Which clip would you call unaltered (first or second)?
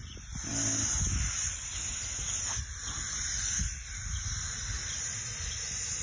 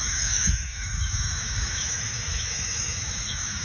first